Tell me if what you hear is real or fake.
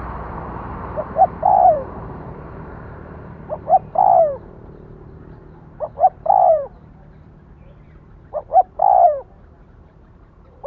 fake